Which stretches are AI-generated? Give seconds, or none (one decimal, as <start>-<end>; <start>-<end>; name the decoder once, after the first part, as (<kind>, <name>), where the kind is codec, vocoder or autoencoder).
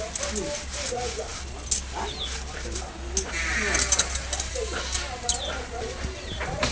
none